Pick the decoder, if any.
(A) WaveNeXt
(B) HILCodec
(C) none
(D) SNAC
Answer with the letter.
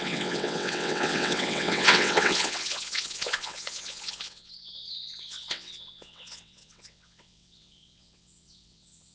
A